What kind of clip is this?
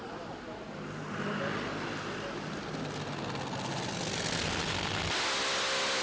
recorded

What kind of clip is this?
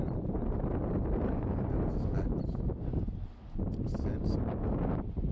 recorded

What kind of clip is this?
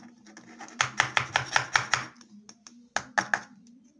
recorded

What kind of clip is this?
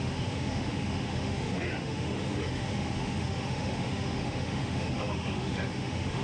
remade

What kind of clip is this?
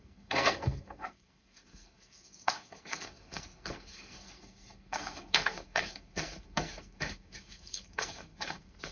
remade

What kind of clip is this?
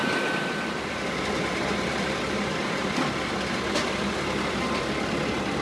remade